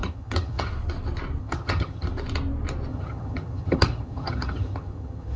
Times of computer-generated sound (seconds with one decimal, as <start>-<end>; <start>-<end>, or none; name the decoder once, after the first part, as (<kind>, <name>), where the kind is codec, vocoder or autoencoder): 0.0-0.7 (vocoder, HiFi-GAN); 1.4-2.1; 2.9-5.4